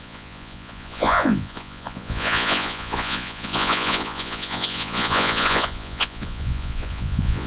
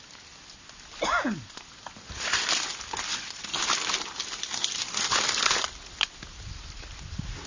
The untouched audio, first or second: second